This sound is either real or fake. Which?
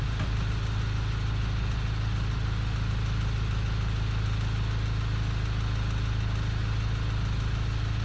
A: real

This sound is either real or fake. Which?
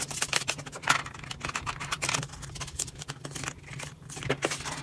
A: real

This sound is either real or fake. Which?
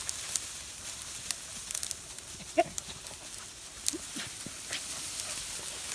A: real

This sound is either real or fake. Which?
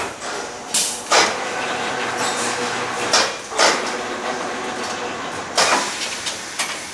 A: real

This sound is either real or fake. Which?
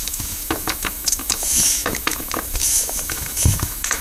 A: fake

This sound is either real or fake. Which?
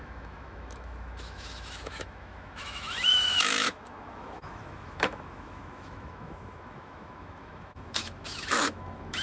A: fake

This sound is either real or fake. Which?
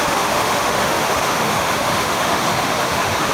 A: fake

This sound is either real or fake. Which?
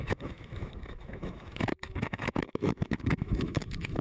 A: fake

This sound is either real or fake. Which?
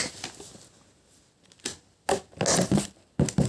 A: real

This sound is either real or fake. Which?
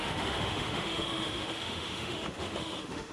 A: fake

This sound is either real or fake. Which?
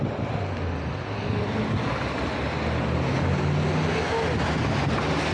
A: real